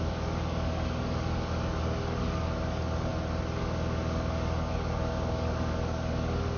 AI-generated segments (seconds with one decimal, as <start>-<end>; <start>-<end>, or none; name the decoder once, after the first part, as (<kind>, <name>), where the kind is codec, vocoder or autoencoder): 0.0-3.1 (codec, DAC); 3.6-6.6